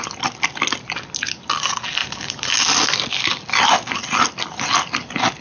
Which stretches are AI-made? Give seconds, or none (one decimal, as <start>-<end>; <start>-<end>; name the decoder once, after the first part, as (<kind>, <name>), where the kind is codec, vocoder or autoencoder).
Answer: 2.0-2.5 (vocoder, BigVGAN v2)